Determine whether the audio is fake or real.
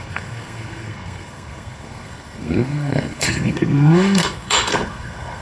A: fake